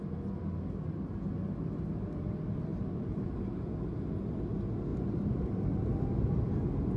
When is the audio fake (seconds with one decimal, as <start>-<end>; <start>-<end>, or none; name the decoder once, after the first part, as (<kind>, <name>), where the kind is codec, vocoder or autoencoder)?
2.7-3.2 (vocoder, BigVGAN v2); 4.9-6.2